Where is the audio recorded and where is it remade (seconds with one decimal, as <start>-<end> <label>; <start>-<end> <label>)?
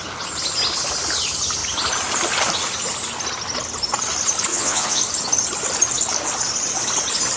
0.0-4.5 recorded; 4.5-5.0 remade; 5.0-7.4 recorded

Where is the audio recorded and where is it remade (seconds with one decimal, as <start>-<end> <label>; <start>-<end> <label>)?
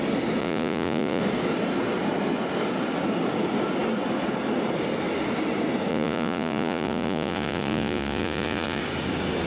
0.0-0.4 recorded; 0.4-1.2 remade; 1.2-5.9 recorded; 5.9-8.8 remade; 8.8-9.5 recorded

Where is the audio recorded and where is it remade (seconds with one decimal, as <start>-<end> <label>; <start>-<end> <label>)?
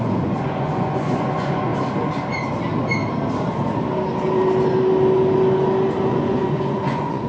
0.0-1.7 remade; 1.7-6.1 recorded; 6.1-7.3 remade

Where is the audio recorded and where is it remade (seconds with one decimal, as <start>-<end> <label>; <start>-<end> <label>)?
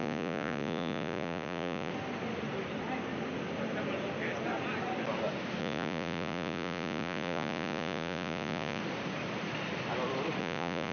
0.0-1.9 remade; 1.9-5.6 recorded; 5.6-8.8 remade; 8.8-10.4 recorded; 10.4-10.9 remade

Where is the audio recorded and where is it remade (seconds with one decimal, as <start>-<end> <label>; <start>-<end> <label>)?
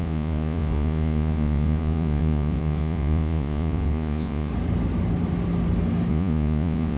0.0-4.5 remade; 4.5-6.1 recorded; 6.1-7.0 remade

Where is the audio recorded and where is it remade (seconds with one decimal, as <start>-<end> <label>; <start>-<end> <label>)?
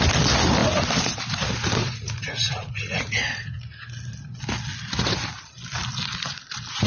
0.0-1.8 recorded; 1.8-3.6 remade; 3.6-6.9 recorded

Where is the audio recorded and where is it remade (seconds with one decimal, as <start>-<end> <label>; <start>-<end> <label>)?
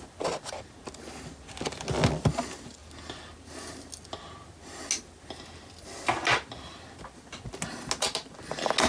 0.0-8.9 recorded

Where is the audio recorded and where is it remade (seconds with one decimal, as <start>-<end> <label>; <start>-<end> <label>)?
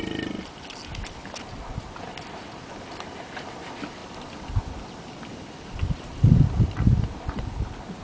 0.0-8.0 recorded